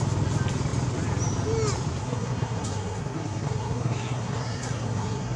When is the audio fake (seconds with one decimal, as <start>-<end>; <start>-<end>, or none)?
2.0-5.4